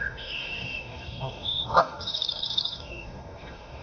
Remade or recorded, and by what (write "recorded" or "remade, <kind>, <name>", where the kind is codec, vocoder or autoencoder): remade, codec, DAC